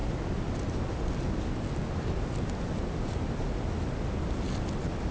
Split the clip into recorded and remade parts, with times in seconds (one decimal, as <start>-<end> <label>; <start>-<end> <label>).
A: 0.0-5.1 recorded